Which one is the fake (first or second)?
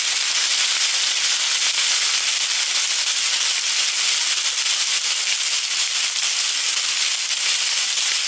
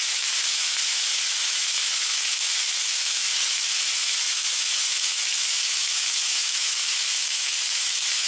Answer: second